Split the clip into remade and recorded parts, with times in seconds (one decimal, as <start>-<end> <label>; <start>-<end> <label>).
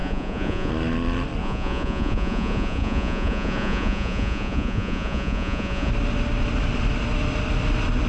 0.0-0.7 remade; 0.7-1.4 recorded; 1.4-5.9 remade; 5.9-8.1 recorded